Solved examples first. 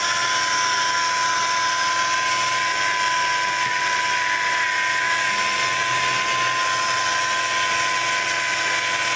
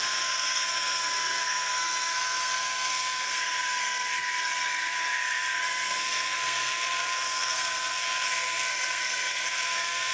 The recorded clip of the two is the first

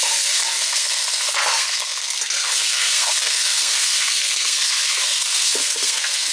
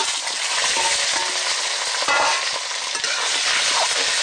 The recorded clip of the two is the second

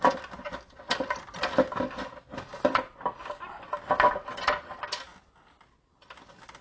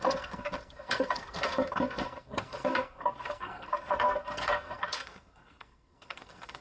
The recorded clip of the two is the first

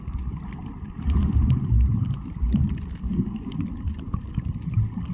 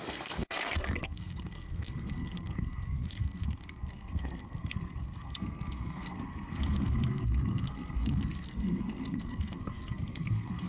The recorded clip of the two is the first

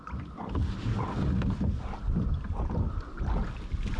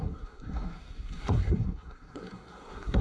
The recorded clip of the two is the first